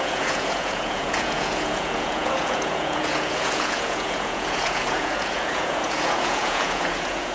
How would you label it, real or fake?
fake